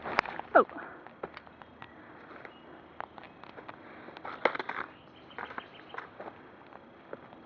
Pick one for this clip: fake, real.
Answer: real